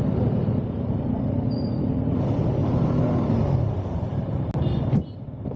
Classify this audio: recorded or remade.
recorded